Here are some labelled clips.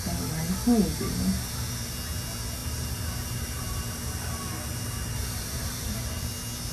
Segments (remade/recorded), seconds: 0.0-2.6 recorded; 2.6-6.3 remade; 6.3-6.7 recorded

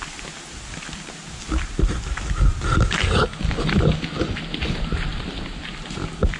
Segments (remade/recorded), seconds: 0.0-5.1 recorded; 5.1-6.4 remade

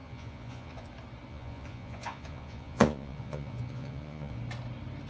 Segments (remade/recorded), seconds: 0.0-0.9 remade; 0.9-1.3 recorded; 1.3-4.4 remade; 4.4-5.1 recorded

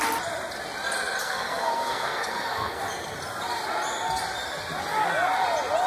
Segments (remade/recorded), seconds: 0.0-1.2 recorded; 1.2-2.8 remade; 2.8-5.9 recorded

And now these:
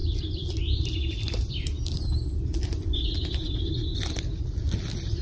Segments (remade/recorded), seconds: 0.0-2.5 remade; 2.5-4.0 recorded; 4.0-5.2 remade

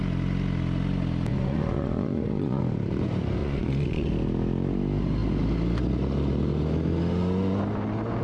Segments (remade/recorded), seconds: 0.0-1.3 recorded; 1.3-2.6 remade; 2.6-3.4 recorded; 3.4-4.1 remade; 4.1-8.2 recorded

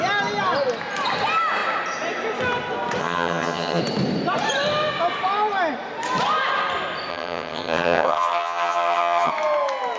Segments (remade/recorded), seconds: 0.0-3.0 recorded; 3.0-3.8 remade; 3.8-7.1 recorded; 7.1-9.3 remade; 9.3-10.0 recorded